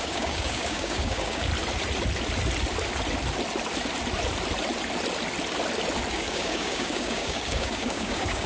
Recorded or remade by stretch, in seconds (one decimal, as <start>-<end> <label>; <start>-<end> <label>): 0.0-1.5 remade; 1.5-6.1 recorded; 6.1-8.5 remade